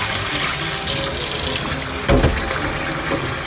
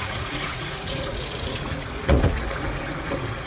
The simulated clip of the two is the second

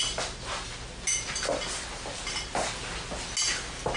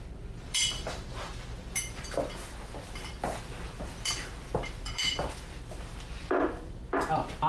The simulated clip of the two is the second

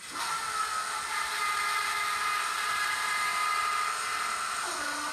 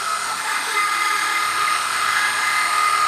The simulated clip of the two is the second